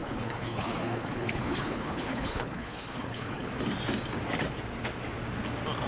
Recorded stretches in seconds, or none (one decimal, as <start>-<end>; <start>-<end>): 3.5-5.9